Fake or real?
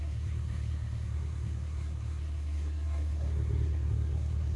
fake